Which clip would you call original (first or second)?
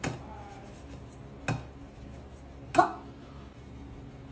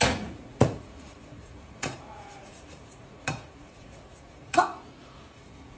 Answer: first